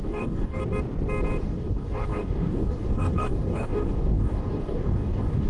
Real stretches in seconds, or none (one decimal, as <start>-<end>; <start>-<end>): 0.6-1.4